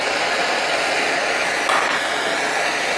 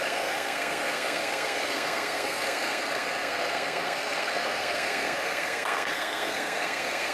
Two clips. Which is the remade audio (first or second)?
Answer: second